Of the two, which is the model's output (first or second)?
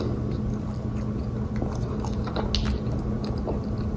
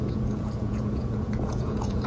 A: second